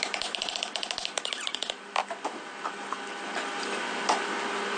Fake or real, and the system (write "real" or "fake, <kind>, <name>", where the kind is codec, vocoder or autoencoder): real